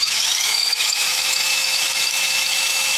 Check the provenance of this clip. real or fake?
fake